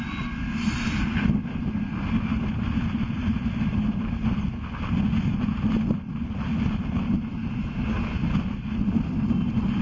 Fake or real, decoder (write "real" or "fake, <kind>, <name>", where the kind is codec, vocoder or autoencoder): real